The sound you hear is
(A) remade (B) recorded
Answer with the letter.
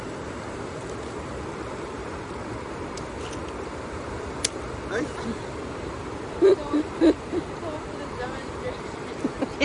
A